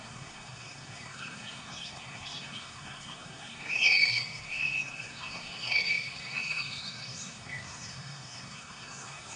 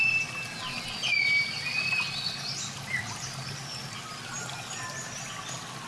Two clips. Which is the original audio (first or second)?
second